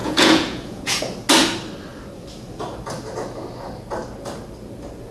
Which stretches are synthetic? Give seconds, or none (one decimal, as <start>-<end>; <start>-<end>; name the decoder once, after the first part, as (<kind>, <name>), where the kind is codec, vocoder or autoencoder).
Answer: 0.0-1.0 (vocoder, Vocos)